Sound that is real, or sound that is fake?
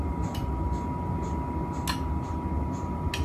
real